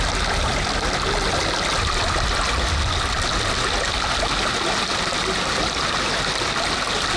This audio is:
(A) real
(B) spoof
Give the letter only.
A